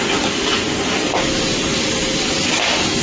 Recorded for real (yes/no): yes